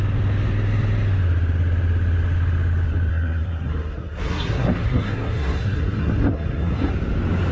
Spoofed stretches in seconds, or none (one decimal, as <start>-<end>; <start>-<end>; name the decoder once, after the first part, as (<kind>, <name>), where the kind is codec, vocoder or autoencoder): 3.1-6.9 (codec, SNAC)